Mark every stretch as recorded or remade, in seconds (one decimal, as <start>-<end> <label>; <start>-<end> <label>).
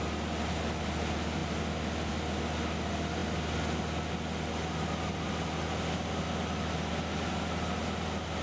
0.0-8.4 recorded